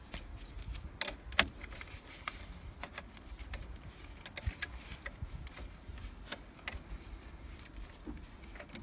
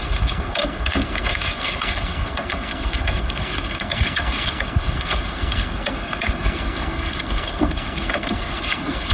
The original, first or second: first